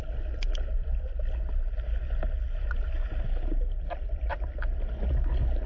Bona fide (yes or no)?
yes